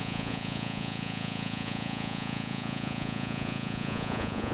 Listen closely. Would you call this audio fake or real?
fake